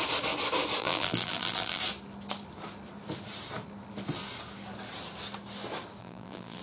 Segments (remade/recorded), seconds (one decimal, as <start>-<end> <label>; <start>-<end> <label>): 0.0-0.8 recorded; 0.8-1.8 remade; 1.8-6.0 recorded; 6.0-6.6 remade